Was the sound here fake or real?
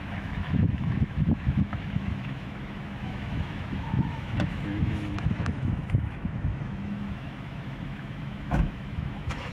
fake